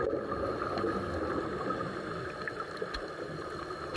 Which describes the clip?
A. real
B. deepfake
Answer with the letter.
A